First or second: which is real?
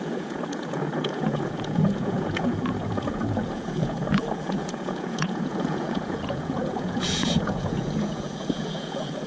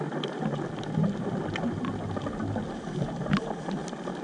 second